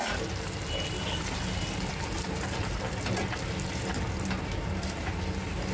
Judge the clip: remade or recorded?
recorded